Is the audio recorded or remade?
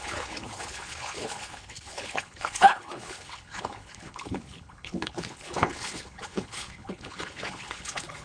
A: remade